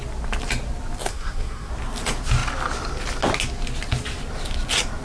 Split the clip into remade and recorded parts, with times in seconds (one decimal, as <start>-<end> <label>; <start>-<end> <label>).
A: 0.0-1.1 recorded; 1.1-1.7 remade; 1.7-5.0 recorded